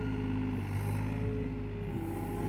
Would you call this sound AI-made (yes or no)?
no